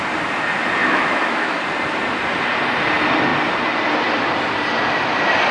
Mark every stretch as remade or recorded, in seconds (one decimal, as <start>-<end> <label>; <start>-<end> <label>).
0.0-0.8 recorded; 0.8-1.6 remade; 1.6-5.5 recorded